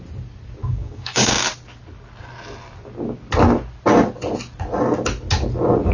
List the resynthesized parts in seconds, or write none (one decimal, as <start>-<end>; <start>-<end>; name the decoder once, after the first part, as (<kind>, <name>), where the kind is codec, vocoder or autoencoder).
0.6-1.3 (codec, DAC)